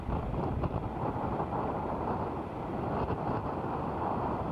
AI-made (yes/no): no